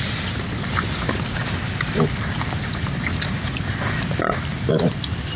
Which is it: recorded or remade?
recorded